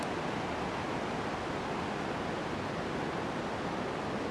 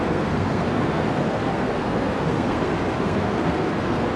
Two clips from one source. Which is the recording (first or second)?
first